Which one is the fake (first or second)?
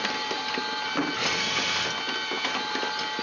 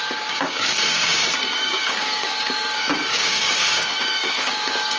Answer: second